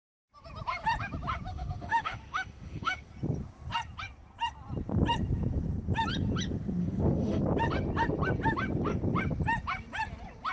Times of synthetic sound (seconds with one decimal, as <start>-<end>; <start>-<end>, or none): 1.5-3.1; 6.8-7.4